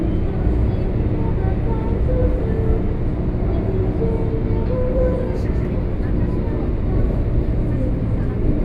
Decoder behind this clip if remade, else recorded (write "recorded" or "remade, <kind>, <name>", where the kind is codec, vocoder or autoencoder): recorded